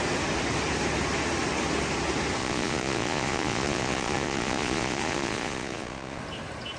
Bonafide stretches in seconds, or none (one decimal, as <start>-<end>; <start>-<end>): 0.0-2.4; 6.2-6.8